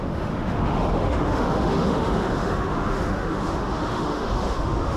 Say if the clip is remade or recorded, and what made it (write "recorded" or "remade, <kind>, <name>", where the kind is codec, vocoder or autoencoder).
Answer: remade, autoencoder, DAC-VAE